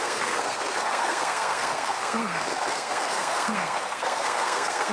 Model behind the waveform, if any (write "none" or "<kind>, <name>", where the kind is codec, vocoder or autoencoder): codec, SNAC